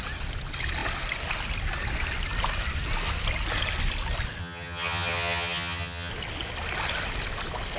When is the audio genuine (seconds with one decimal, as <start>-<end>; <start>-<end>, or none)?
0.0-4.4; 6.1-7.8